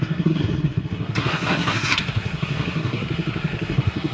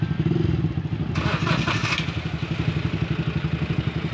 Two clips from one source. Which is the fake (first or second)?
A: first